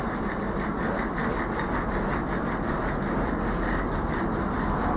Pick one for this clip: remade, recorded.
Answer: recorded